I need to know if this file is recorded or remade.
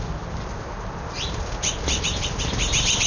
recorded